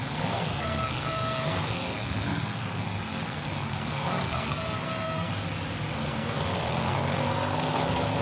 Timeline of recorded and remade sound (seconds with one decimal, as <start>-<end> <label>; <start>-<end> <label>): 0.0-5.3 remade; 5.3-6.0 recorded; 6.0-8.2 remade